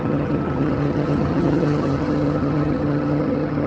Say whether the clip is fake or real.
fake